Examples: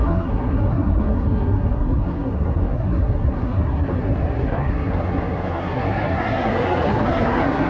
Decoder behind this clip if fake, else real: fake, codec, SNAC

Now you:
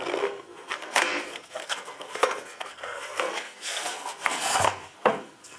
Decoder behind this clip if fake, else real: fake, codec, SNAC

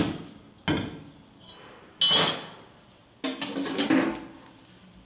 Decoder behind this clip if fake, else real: real